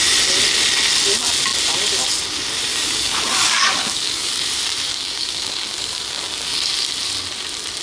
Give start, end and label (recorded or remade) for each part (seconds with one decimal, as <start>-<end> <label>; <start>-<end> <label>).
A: 0.0-2.7 recorded; 2.7-4.3 remade; 4.3-4.9 recorded; 4.9-6.7 remade; 6.7-7.8 recorded